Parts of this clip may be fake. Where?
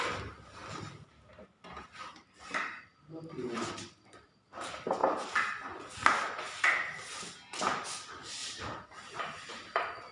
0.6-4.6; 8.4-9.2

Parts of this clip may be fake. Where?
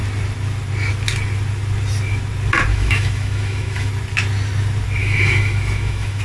2.7-3.9; 5.0-6.2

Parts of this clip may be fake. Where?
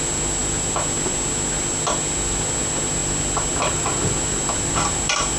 none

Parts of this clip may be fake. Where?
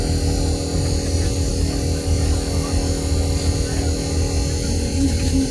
none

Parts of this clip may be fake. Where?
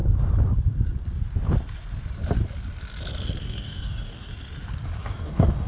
3.4-4.3; 5.0-5.7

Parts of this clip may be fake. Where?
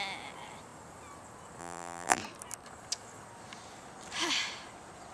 1.6-2.2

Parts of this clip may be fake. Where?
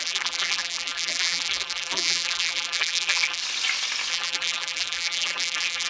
0.0-3.4; 4.1-5.9